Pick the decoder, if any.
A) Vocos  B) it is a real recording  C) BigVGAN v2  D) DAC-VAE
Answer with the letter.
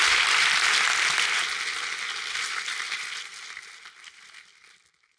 B